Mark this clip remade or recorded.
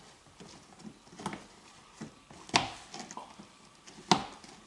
recorded